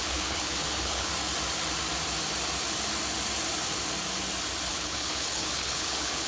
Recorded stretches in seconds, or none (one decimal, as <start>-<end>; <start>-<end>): 1.1-4.7